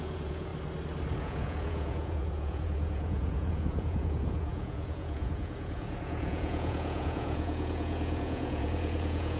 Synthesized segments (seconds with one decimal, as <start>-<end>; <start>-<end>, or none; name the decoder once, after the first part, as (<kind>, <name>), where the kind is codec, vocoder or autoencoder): 0.0-0.5 (vocoder, Vocos); 1.2-9.4